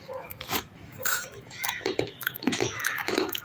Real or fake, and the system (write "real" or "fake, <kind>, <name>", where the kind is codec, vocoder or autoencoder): fake, autoencoder, DAC-VAE